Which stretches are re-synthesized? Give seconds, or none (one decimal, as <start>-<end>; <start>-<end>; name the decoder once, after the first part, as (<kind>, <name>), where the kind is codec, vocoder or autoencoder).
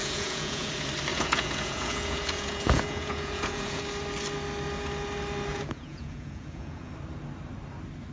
0.0-0.7 (vocoder, Vocos); 1.1-3.8; 5.5-6.9